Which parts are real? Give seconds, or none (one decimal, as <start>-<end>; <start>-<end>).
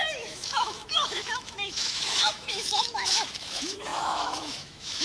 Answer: none